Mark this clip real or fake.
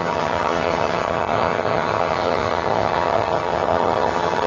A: fake